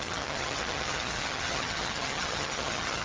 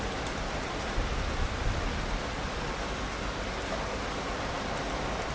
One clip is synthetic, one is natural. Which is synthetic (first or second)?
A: first